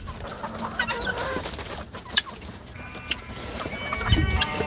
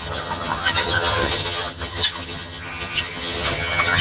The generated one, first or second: second